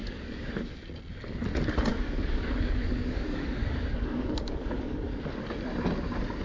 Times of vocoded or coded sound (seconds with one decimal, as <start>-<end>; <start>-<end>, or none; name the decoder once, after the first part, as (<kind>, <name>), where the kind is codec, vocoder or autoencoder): 0.0-0.5 (codec, DAC); 1.9-5.1